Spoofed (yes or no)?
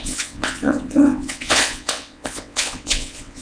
yes